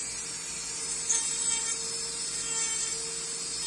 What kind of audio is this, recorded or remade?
recorded